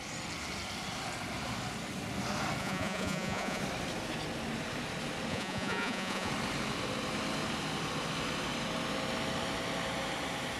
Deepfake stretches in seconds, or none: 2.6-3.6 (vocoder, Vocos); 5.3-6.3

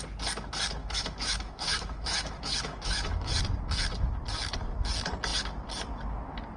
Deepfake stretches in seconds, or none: 0.8-3.4 (autoencoder, DAC-VAE)